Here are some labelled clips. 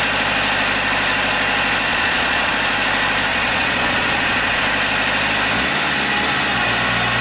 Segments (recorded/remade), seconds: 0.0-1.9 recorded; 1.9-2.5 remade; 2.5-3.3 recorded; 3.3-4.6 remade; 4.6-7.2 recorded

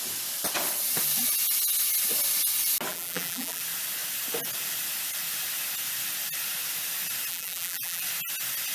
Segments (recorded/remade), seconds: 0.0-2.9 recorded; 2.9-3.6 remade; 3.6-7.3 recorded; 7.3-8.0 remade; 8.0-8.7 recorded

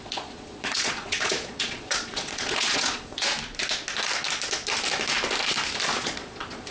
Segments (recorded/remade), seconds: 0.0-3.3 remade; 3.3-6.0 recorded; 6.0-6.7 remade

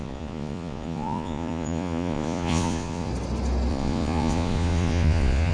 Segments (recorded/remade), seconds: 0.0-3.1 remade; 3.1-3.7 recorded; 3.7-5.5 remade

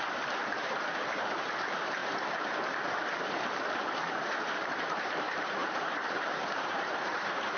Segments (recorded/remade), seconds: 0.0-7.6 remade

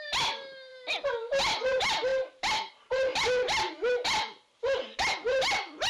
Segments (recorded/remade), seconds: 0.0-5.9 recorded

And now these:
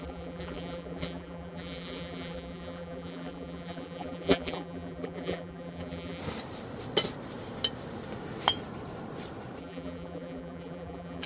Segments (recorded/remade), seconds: 0.0-6.2 remade; 6.2-9.6 recorded; 9.6-11.3 remade

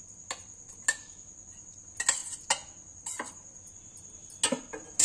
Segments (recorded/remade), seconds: 0.0-5.0 recorded